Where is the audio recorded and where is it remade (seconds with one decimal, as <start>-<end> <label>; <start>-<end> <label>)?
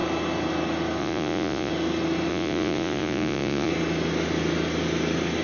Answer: 0.0-1.0 recorded; 1.0-1.7 remade; 1.7-2.3 recorded; 2.3-3.7 remade; 3.7-5.4 recorded